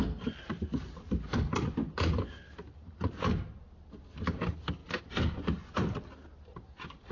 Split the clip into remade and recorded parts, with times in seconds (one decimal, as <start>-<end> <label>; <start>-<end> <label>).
0.0-7.1 recorded